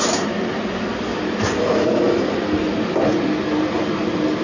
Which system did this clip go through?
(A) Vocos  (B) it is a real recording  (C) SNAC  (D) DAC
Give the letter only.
B